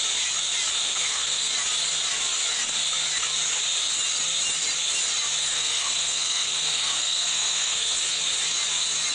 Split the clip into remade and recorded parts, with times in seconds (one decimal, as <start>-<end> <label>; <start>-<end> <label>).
0.0-0.8 recorded; 0.8-1.5 remade; 1.5-5.5 recorded; 5.5-8.2 remade; 8.2-9.1 recorded